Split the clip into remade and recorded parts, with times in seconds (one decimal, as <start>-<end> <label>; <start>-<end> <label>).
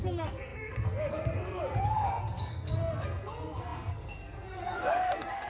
0.0-5.5 remade